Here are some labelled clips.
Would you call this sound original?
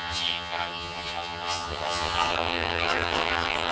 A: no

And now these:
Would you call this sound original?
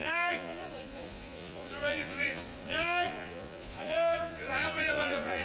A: no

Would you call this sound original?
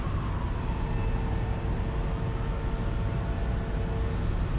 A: yes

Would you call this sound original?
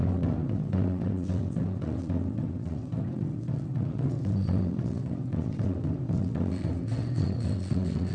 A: no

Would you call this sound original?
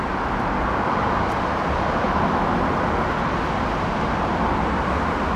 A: yes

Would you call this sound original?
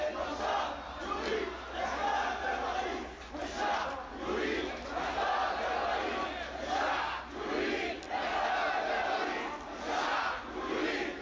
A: yes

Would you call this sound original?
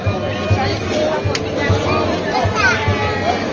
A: yes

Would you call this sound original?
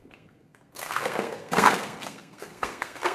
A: no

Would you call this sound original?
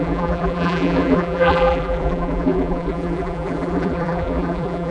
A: no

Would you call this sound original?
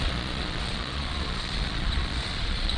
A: no